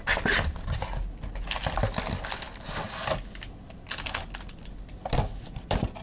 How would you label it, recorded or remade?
recorded